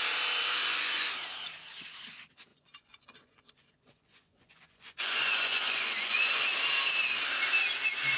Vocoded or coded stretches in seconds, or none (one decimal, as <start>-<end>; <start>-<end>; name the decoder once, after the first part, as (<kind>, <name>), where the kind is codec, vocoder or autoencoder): 0.6-1.1 (vocoder, Vocos); 2.5-6.4